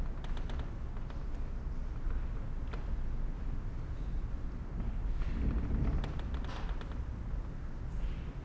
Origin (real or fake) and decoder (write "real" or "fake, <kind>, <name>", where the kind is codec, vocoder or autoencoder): real